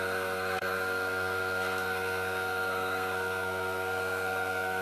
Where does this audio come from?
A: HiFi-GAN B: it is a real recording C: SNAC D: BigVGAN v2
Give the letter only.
C